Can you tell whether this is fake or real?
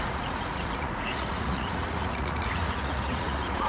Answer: fake